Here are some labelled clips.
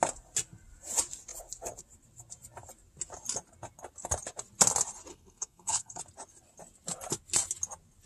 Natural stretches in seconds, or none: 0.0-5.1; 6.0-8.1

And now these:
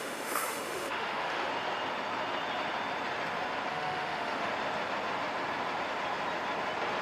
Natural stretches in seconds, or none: 1.5-3.7; 4.5-7.0

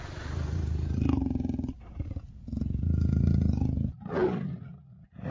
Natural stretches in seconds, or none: 0.0-5.3

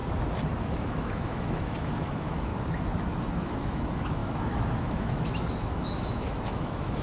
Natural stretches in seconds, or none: 0.0-0.6; 2.5-3.2

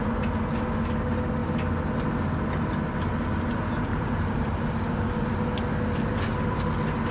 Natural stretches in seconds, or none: 0.0-3.9; 5.3-7.1